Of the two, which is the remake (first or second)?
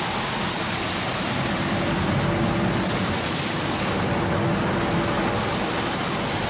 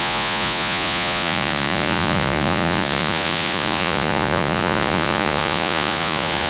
second